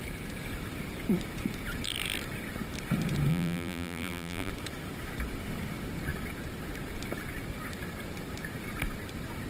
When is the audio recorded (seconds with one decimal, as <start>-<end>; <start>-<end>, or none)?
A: 0.0-3.3; 4.5-9.5